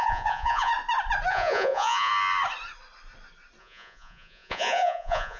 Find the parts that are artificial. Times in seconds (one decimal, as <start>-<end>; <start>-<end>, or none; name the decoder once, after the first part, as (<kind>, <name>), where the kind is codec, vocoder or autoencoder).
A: 0.0-0.7 (vocoder, Vocos); 1.3-2.1; 3.6-5.4